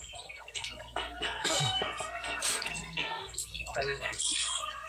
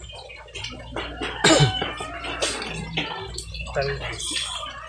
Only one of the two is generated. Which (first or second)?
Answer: first